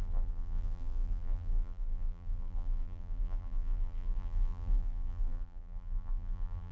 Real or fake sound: fake